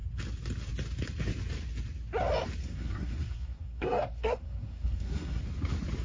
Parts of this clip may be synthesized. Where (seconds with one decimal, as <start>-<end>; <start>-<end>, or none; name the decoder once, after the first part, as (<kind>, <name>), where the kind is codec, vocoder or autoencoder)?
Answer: 2.6-5.4 (codec, SNAC)